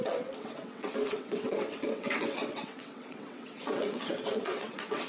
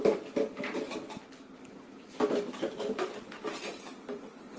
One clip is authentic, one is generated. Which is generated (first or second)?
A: first